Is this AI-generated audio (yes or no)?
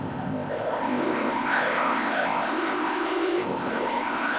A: yes